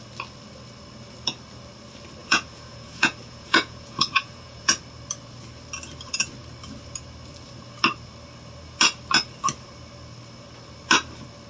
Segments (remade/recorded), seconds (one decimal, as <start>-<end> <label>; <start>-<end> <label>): 0.0-2.2 recorded; 2.2-4.8 remade; 4.8-11.5 recorded